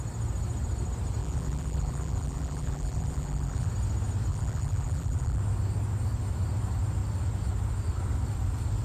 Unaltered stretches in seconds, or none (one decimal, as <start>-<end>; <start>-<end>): 0.0-1.2; 3.7-4.3; 5.4-8.8